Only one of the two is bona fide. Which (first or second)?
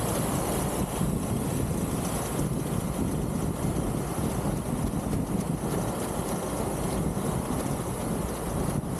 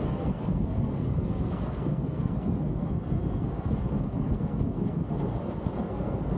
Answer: first